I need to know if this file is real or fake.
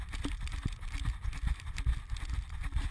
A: real